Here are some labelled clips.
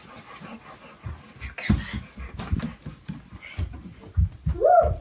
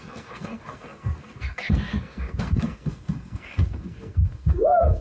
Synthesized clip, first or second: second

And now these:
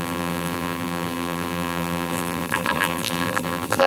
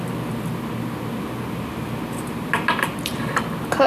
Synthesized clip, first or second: first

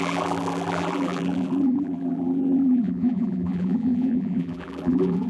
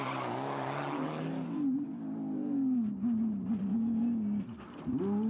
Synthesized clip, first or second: first